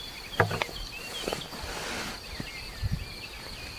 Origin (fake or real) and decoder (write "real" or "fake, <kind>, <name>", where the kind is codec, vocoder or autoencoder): real